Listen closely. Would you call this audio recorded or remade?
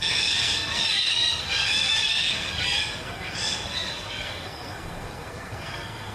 remade